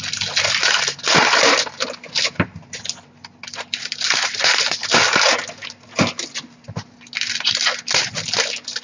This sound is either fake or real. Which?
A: real